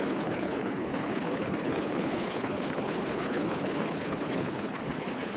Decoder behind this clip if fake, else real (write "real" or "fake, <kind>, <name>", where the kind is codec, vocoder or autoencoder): fake, codec, HILCodec